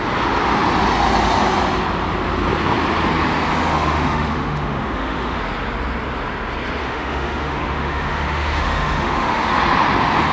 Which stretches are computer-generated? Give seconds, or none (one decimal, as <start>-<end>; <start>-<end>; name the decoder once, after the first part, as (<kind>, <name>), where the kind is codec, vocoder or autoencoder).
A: 3.7-5.4 (autoencoder, DAC-VAE); 6.8-9.5